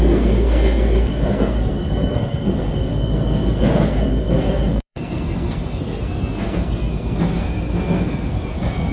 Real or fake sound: fake